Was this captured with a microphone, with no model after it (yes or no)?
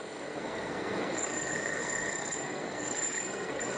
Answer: no